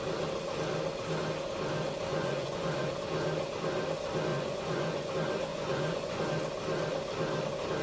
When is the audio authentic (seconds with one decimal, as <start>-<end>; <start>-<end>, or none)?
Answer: 0.0-2.1; 2.9-4.3; 5.1-5.5; 6.2-7.8